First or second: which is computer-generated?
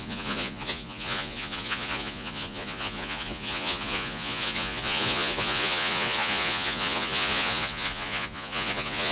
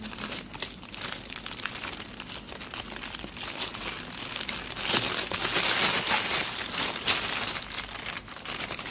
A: first